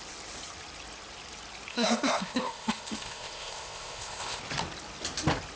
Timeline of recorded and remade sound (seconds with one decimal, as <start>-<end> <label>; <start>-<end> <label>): 0.0-1.7 recorded; 1.7-4.4 remade; 4.4-5.6 recorded